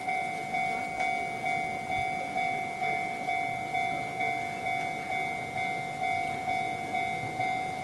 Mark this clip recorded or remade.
recorded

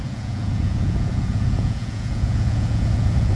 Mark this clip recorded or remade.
remade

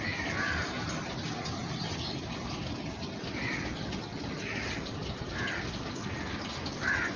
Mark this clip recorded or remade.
recorded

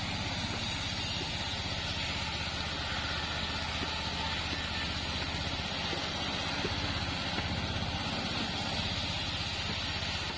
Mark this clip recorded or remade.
recorded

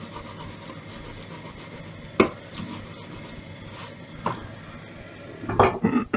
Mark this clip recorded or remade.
recorded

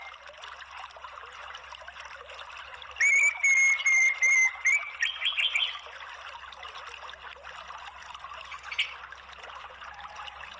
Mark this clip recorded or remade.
recorded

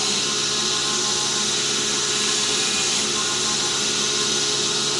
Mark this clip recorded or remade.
recorded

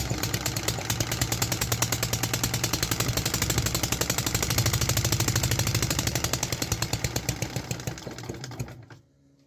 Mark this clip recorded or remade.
recorded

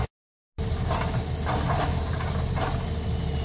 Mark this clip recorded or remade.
recorded